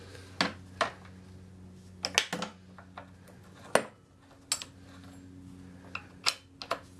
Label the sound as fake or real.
real